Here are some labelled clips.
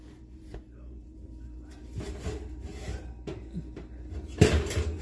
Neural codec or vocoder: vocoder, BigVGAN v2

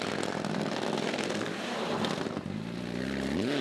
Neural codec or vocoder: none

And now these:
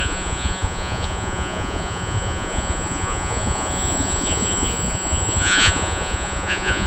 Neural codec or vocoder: vocoder, Vocos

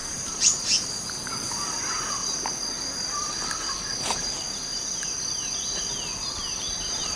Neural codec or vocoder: none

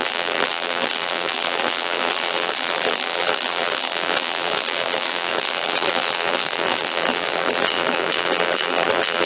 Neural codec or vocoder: vocoder, BigVGAN v2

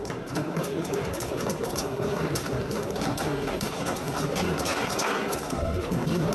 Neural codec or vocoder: codec, SNAC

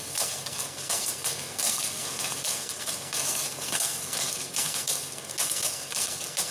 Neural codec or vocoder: codec, SNAC